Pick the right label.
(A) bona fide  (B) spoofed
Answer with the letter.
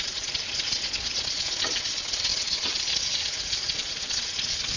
B